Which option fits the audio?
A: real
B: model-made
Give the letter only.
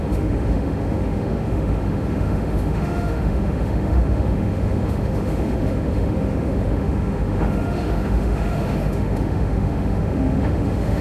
B